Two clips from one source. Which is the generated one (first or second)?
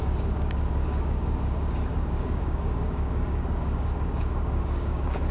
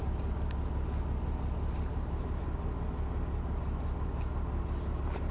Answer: first